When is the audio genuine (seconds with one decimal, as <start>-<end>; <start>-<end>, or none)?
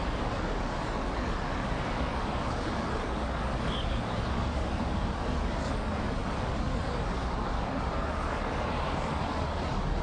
none